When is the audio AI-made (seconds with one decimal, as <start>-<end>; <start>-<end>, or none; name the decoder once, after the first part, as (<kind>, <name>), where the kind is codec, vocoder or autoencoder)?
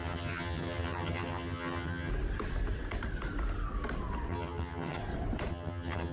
0.0-2.1 (vocoder, HiFi-GAN); 4.3-5.0; 5.5-6.1